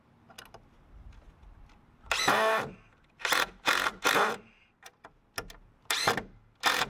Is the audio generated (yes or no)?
no